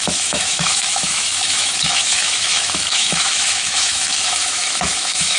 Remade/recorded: remade